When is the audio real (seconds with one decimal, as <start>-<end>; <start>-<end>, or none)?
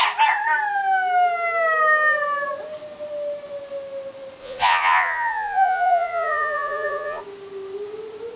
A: 0.0-4.4; 7.2-8.4